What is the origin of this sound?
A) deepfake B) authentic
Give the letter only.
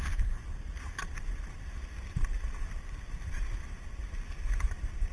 B